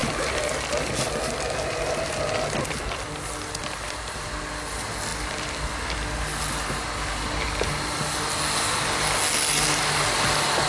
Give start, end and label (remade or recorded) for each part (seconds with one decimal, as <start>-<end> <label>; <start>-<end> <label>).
0.0-10.7 recorded